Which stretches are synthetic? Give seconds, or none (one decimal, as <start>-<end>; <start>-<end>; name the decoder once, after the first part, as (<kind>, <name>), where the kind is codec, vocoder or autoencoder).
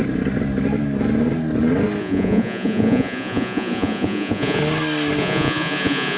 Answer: 2.0-4.6 (vocoder, Vocos); 5.2-6.2